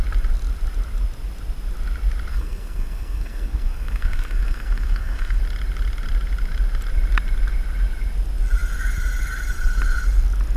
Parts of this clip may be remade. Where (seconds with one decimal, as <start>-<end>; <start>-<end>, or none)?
2.3-5.4